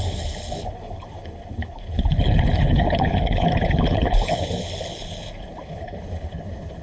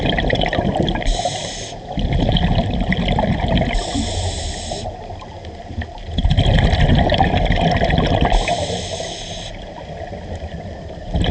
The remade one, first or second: first